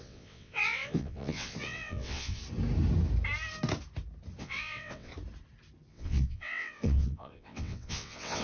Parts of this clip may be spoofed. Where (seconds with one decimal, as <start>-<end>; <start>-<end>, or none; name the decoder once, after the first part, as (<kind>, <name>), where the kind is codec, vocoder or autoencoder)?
0.0-2.4 (vocoder, WaveNeXt); 4.4-5.1; 5.9-8.4